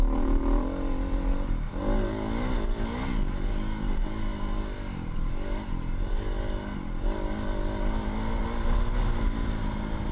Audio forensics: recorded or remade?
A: recorded